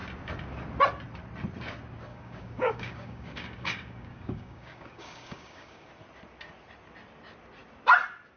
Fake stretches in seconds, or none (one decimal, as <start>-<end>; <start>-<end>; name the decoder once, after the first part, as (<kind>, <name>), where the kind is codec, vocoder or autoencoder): 2.1-5.9 (codec, DAC)